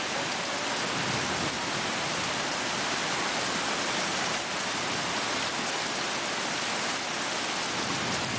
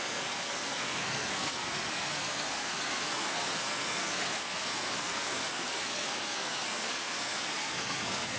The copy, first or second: second